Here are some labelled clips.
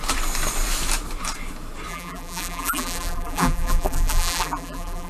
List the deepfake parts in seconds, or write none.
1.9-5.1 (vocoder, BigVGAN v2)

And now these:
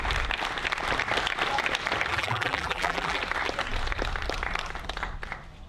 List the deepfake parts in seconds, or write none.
2.1-3.2 (vocoder, BigVGAN v2)

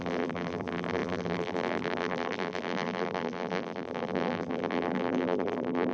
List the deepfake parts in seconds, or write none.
0.0-5.9 (vocoder, BigVGAN v2)

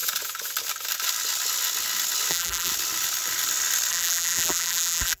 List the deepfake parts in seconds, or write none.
2.3-2.7 (vocoder, BigVGAN v2); 3.9-5.2

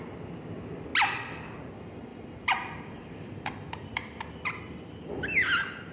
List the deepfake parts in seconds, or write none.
2.1-4.6 (vocoder, BigVGAN v2)

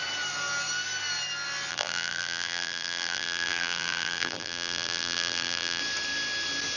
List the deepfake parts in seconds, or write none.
1.7-5.8 (vocoder, BigVGAN v2)

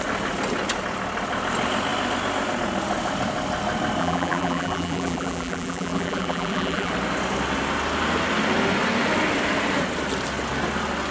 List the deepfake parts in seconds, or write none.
4.0-6.9 (vocoder, BigVGAN v2)